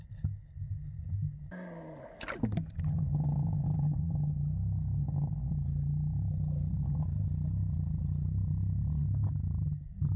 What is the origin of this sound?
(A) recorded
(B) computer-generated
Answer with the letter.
A